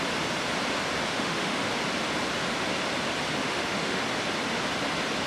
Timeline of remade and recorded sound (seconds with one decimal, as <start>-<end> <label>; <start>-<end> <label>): 0.0-1.1 recorded; 1.1-1.7 remade; 1.7-3.4 recorded; 3.4-4.0 remade; 4.0-5.3 recorded